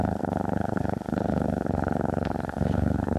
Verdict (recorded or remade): remade